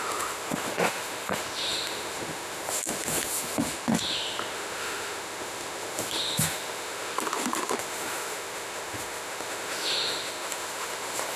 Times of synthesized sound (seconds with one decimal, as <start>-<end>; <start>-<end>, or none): 0.0-11.4

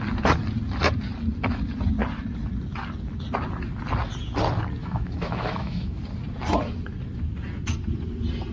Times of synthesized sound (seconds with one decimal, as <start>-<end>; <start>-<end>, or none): 4.8-6.0

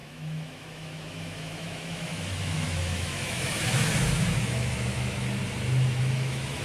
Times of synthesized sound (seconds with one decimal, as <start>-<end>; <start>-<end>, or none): 0.0-5.4; 6.0-6.6

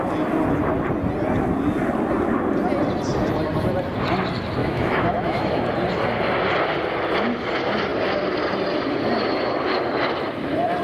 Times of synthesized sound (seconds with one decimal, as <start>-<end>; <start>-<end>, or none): 4.6-5.6

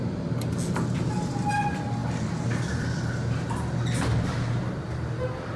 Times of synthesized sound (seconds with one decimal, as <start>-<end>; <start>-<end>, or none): none

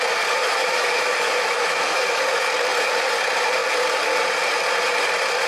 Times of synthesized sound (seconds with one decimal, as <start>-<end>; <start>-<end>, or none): 0.4-2.2

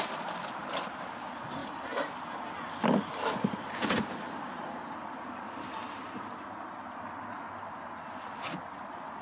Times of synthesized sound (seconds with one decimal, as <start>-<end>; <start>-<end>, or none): none

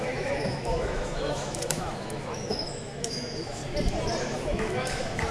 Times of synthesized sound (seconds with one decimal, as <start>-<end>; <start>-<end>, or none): 0.0-3.6; 4.2-5.3